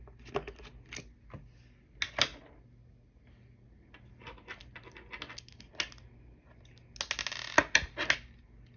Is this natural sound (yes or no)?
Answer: yes